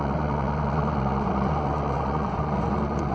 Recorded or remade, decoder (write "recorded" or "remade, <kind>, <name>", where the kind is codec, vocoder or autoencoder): remade, vocoder, Vocos